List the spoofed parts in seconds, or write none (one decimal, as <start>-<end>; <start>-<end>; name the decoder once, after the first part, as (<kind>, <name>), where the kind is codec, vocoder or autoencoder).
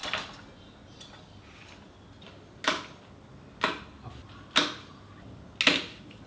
none